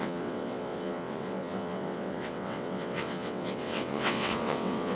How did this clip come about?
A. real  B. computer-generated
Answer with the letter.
B